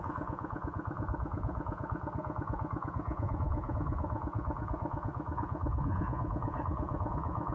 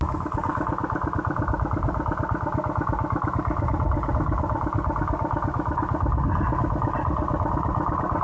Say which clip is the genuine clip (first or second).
second